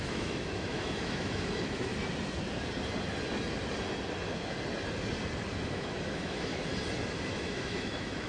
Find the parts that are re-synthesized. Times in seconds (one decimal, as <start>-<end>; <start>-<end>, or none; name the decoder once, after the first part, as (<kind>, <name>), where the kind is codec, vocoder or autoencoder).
0.0-1.9 (autoencoder, DAC-VAE); 5.7-6.7; 7.3-8.3